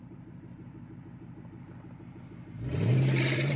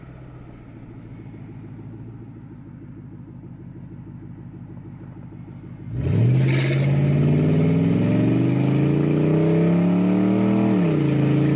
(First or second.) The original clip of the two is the second